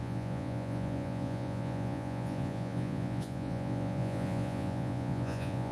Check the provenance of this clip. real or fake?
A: fake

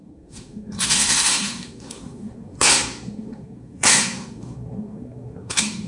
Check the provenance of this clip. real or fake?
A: fake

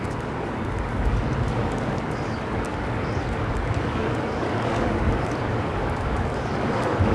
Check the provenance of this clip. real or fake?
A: fake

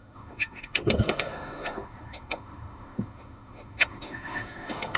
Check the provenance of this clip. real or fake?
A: fake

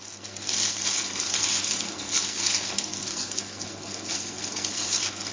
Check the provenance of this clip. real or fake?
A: fake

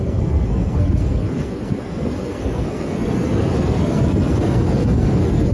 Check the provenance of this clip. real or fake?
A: fake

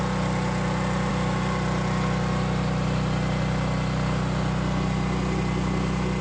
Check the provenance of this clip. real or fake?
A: real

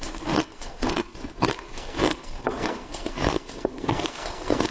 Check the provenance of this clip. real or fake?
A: fake